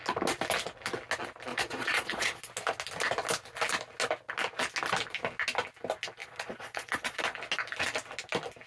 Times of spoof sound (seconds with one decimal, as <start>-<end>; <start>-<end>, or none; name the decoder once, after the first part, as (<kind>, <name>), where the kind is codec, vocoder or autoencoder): 1.5-2.4 (vocoder, Vocos); 6.2-7.2